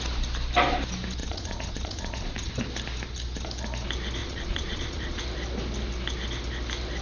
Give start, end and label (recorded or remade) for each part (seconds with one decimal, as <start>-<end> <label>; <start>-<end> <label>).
0.0-1.2 recorded; 1.2-2.5 remade; 2.5-4.2 recorded; 4.2-5.2 remade; 5.2-7.0 recorded